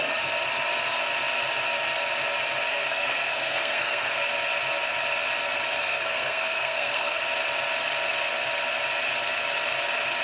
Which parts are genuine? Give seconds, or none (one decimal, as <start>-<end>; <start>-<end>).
0.0-2.7; 4.3-5.8; 7.2-10.2